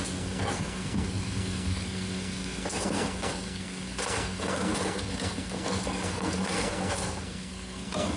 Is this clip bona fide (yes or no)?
no